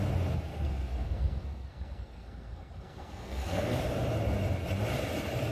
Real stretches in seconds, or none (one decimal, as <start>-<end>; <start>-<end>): 0.0-0.5; 3.8-5.5